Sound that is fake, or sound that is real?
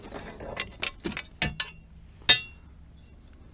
real